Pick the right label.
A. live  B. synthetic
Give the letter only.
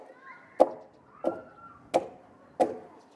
A